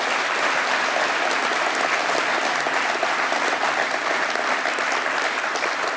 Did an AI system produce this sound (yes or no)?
no